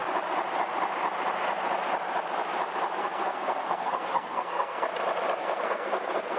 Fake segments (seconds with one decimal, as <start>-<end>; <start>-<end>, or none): 3.0-4.9; 5.4-6.4